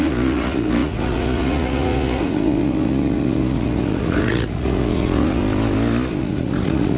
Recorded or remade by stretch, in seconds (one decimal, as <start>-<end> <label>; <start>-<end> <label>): 0.0-5.4 remade; 5.4-6.2 recorded; 6.2-7.0 remade